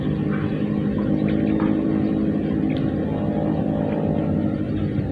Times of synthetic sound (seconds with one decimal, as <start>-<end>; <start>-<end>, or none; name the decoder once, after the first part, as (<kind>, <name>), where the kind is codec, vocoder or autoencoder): none